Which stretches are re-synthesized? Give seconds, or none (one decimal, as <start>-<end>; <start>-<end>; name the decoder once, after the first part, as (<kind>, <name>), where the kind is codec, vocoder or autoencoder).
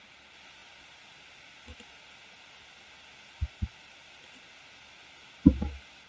none